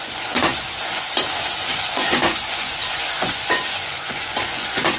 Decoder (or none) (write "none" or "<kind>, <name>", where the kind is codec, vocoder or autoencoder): vocoder, Vocos